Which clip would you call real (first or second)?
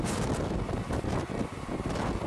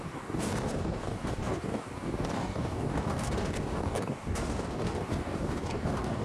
first